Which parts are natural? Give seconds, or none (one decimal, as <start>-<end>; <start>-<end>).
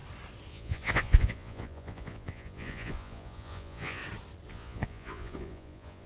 0.0-0.5; 4.0-4.5